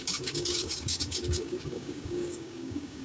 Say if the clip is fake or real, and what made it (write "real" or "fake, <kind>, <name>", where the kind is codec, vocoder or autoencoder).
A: fake, codec, DAC